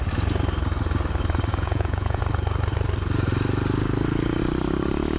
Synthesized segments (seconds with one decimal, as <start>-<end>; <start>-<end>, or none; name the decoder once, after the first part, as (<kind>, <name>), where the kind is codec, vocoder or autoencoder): 1.5-2.2 (vocoder, Vocos)